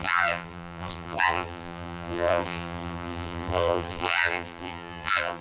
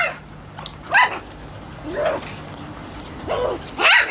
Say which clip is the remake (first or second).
first